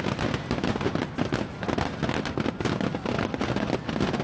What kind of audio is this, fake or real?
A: real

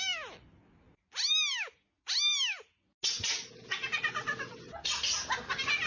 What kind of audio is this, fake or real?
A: real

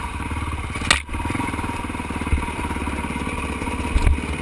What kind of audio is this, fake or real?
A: real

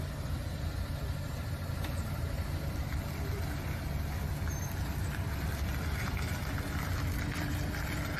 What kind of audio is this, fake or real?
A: real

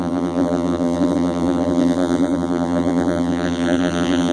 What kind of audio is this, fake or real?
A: fake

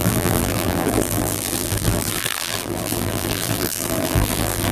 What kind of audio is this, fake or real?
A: fake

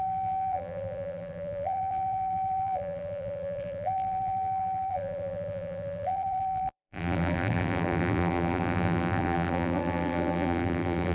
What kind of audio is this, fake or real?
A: fake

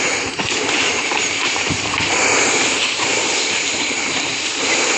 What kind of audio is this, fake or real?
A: fake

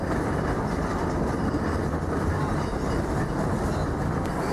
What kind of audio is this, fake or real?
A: fake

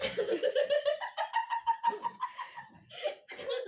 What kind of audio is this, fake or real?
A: fake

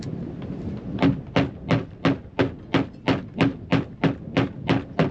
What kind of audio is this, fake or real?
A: real